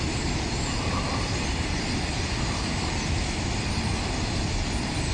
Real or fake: real